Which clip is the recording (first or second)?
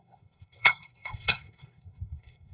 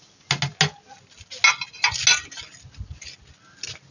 second